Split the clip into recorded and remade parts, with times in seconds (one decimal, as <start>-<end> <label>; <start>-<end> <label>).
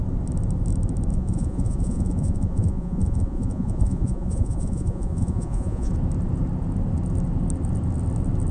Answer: 0.0-1.1 recorded; 1.1-5.9 remade; 5.9-8.5 recorded